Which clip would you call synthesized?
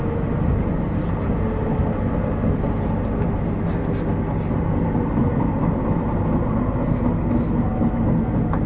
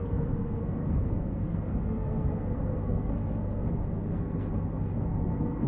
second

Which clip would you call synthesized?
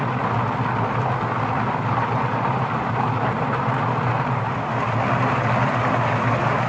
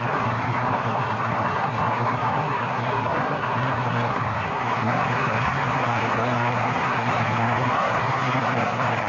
second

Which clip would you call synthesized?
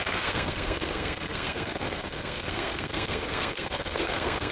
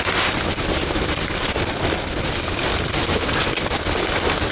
first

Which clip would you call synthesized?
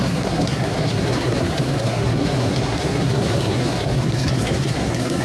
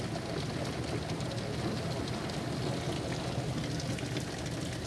first